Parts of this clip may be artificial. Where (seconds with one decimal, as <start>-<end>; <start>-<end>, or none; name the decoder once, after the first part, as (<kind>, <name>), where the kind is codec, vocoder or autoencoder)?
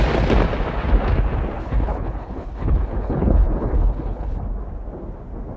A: 1.6-4.4 (codec, HILCodec)